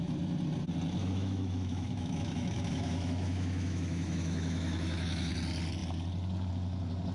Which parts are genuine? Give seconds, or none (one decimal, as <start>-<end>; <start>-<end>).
0.0-1.0; 5.3-7.1